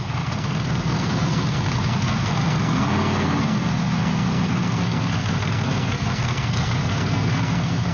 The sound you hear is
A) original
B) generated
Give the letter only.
B